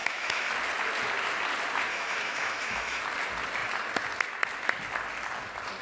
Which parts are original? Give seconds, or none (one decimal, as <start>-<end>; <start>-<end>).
0.5-1.9; 3.0-5.8